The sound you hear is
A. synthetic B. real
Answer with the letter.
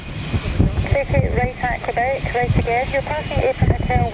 B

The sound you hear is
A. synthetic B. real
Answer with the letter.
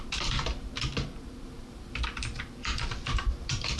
A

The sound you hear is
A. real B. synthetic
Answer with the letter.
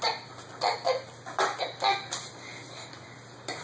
A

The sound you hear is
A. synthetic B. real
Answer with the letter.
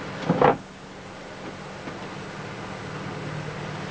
B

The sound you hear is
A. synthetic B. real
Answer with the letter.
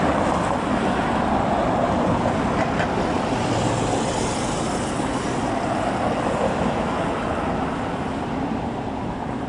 B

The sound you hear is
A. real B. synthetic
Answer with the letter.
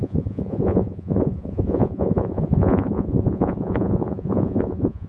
B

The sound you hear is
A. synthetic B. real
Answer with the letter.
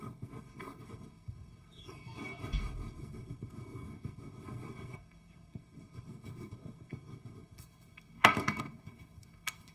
A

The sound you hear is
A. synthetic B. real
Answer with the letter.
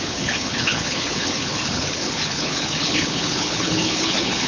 A